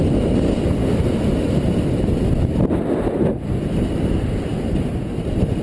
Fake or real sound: real